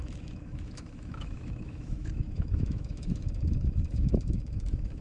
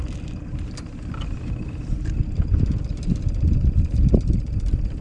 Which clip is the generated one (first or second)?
first